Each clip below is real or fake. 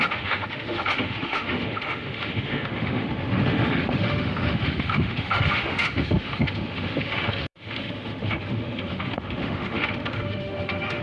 fake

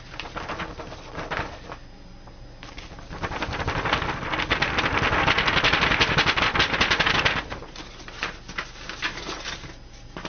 real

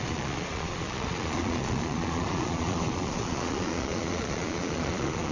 fake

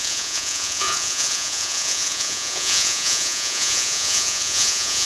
fake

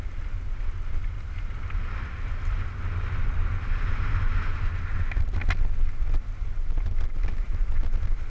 real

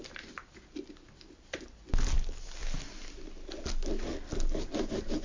real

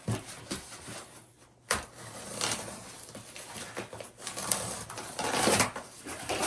real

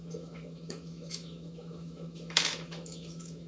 fake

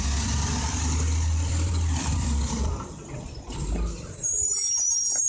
fake